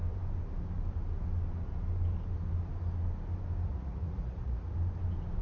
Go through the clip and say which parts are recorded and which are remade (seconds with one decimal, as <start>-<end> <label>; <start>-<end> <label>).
0.0-3.7 recorded; 3.7-4.7 remade; 4.7-5.4 recorded